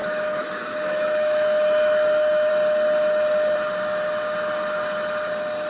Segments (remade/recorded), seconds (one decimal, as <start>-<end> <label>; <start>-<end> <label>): 0.0-2.5 remade; 2.5-5.7 recorded